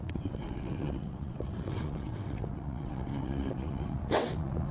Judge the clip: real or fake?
fake